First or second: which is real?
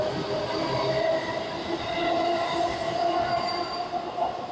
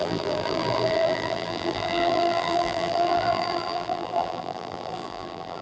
first